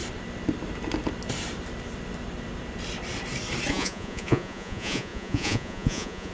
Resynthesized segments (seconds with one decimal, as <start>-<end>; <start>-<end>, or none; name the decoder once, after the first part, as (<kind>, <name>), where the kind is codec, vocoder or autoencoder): 3.7-6.3 (vocoder, Vocos)